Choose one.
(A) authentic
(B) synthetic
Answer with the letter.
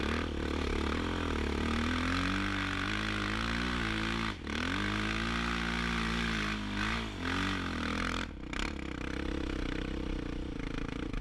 A